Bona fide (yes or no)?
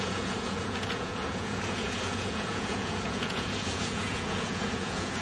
no